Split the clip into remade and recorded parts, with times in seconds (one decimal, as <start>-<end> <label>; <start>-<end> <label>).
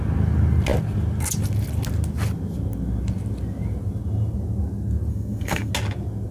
0.0-5.1 recorded; 5.1-5.7 remade; 5.7-6.3 recorded